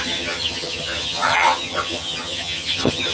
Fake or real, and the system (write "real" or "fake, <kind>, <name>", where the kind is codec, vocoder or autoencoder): fake, vocoder, HiFi-GAN